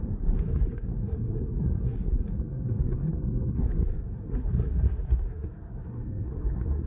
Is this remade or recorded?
remade